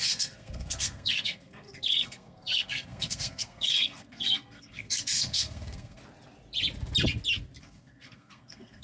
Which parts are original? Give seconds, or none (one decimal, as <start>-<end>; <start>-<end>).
6.0-7.6